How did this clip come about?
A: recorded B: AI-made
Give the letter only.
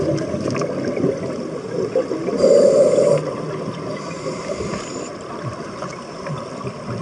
A